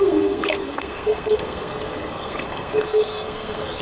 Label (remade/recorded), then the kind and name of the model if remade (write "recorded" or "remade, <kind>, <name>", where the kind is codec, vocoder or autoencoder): remade, codec, SNAC